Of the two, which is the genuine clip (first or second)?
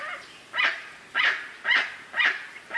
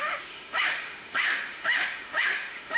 first